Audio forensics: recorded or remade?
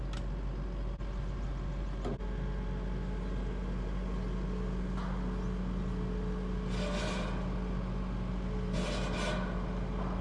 recorded